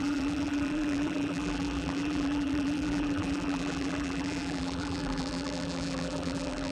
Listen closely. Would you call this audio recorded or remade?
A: remade